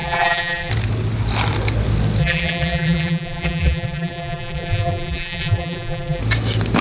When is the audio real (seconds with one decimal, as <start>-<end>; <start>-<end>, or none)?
0.7-2.2; 6.2-6.8